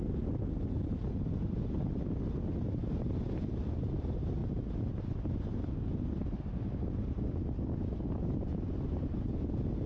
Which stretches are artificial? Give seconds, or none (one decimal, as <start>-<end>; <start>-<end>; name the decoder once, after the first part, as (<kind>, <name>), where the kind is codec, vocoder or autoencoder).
none